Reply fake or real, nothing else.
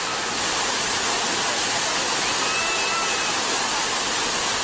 real